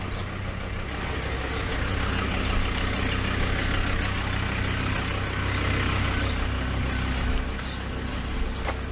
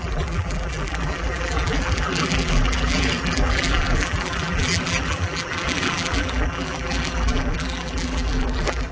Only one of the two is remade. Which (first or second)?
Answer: second